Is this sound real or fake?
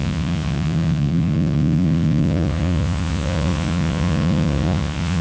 fake